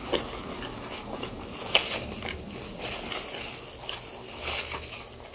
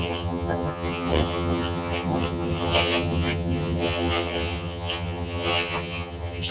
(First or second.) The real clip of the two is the first